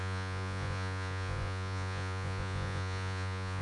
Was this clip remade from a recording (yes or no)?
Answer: yes